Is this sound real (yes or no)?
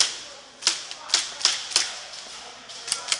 yes